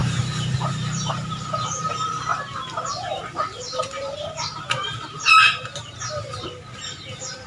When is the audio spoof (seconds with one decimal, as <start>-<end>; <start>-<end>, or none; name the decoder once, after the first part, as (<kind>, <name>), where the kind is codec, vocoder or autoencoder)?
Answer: 0.0-2.3 (vocoder, BigVGAN v2); 2.9-7.5